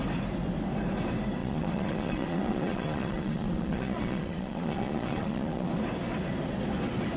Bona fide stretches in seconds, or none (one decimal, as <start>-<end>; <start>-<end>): 0.0-1.4; 5.7-7.2